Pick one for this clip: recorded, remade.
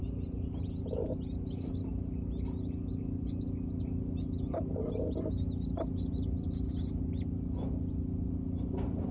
recorded